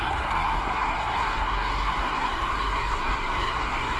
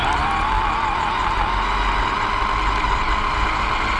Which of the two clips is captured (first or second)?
second